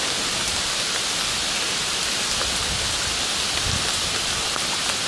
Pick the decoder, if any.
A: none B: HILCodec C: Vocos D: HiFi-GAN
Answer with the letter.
A